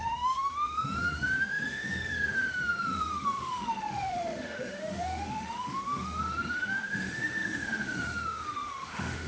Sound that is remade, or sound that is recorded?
remade